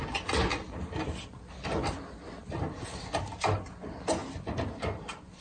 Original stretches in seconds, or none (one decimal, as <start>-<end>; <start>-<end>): 0.0-5.4

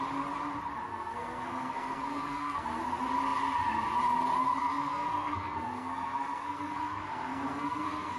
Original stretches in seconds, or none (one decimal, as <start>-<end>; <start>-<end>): 0.0-0.9; 2.8-4.6

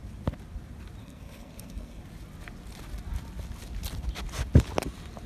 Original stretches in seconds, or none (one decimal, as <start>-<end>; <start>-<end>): 0.0-1.0; 2.0-5.3

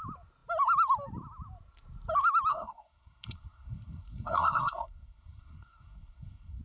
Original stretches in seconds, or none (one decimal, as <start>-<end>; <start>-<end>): 0.0-2.5

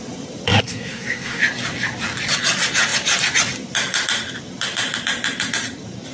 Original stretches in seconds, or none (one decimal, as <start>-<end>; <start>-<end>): 0.0-0.5; 1.4-6.1

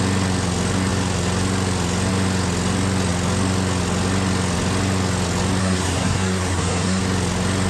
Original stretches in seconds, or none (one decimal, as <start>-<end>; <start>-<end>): 0.0-5.6; 7.0-7.7

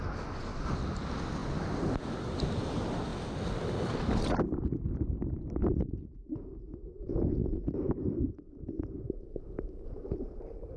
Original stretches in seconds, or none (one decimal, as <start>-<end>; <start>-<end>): 0.0-10.8

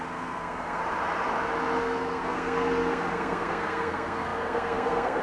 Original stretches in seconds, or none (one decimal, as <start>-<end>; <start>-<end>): 0.8-1.8